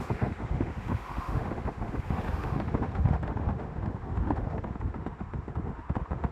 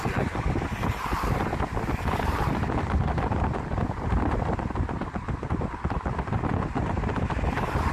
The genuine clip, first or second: second